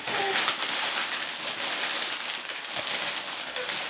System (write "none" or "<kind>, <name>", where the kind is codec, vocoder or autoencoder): none